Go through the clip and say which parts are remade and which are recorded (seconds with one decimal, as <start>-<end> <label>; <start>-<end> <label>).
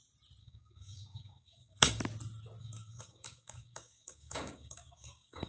0.0-0.4 recorded; 0.4-2.0 remade; 2.0-2.6 recorded; 2.6-5.5 remade